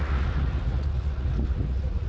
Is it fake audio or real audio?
fake